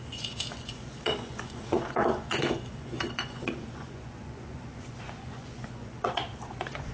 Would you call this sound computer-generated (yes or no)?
yes